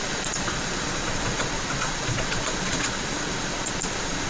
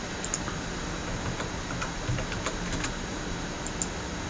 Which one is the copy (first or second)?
first